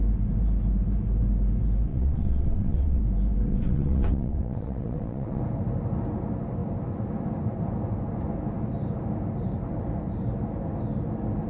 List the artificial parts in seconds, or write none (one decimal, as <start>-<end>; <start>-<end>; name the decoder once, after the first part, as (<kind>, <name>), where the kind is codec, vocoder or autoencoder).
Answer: 1.9-3.0 (vocoder, WaveNeXt); 3.5-5.4